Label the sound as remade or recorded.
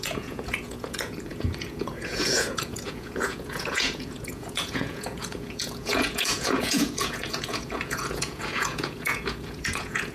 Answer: remade